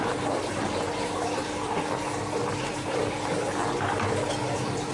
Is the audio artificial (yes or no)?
no